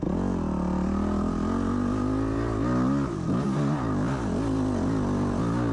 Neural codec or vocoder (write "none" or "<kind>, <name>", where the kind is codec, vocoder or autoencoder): none